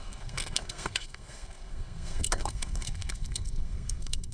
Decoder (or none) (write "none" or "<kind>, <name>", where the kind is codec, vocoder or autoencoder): codec, SNAC